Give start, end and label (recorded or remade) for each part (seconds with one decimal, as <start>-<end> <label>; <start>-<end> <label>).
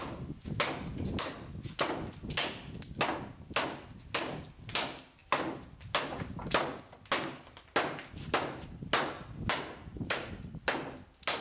0.0-9.8 recorded; 9.8-10.3 remade; 10.3-11.4 recorded